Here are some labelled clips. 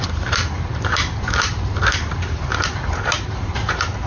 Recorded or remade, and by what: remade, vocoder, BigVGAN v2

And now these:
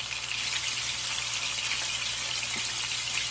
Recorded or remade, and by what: recorded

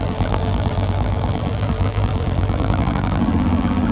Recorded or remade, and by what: remade, vocoder, BigVGAN v2